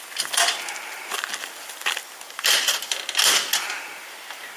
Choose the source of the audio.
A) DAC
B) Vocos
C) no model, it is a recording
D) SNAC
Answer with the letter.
C